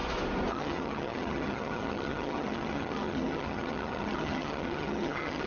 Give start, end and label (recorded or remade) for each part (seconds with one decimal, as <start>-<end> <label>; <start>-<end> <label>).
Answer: 0.0-0.5 recorded; 0.5-5.5 remade